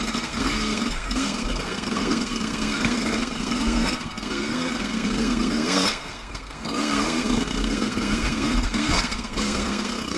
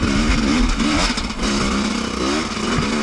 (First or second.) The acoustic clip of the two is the second